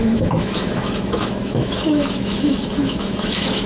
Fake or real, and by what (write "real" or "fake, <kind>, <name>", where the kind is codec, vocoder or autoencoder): fake, autoencoder, DAC-VAE